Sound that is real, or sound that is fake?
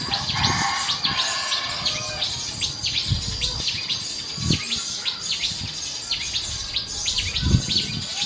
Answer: real